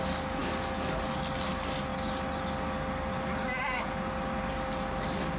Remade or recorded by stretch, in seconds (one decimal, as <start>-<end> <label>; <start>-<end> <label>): 0.0-5.4 recorded